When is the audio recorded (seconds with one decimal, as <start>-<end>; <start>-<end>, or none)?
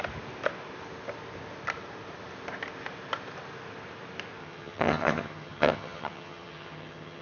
0.0-4.4